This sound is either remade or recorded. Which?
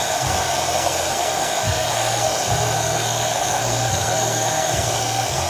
remade